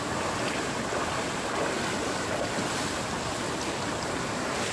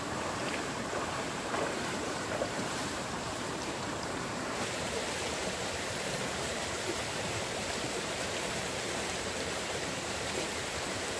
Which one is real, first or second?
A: first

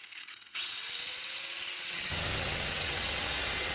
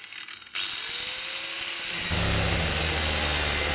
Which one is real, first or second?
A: second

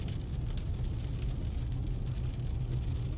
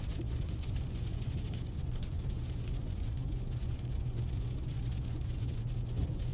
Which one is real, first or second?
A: first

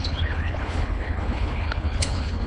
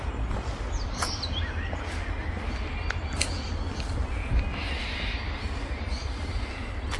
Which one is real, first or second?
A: second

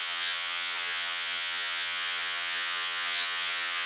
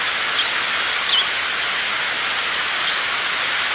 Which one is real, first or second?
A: second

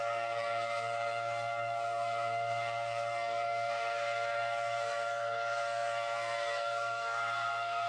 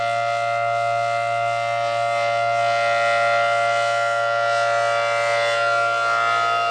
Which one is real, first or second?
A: second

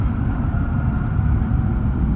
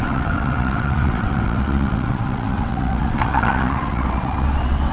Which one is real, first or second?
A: first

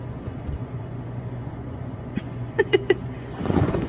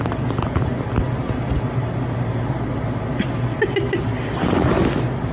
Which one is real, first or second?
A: second